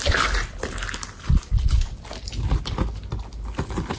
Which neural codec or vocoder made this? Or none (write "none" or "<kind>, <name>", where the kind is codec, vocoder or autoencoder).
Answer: none